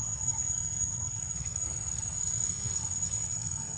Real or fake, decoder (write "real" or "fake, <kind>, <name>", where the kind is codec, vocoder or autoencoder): fake, codec, SNAC